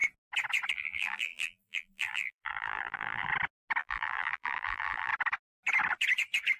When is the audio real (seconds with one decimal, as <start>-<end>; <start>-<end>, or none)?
0.0-0.7; 3.3-3.8; 5.1-6.6